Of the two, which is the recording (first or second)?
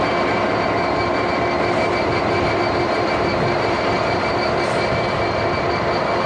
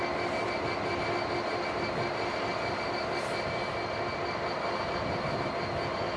second